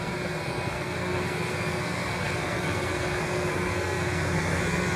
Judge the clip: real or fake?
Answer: fake